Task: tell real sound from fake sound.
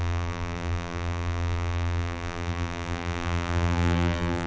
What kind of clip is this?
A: fake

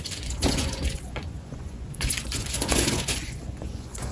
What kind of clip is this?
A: fake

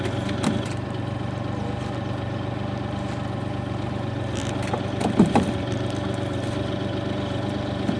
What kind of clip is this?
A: real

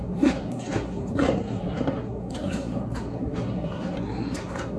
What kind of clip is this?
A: fake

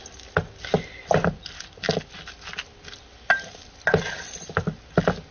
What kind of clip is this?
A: real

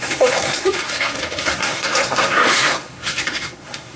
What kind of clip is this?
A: fake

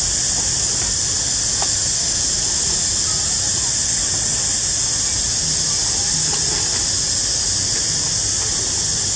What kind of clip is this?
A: real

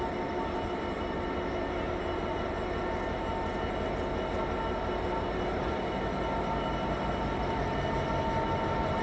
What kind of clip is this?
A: real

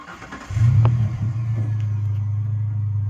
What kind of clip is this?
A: real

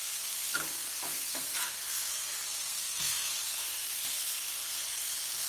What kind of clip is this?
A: fake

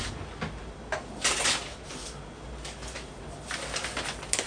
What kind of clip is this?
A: real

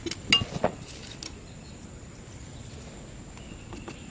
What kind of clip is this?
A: real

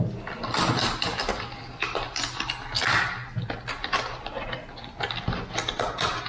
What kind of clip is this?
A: real